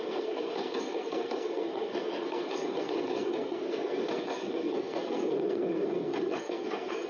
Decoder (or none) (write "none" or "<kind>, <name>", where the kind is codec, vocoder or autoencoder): codec, SNAC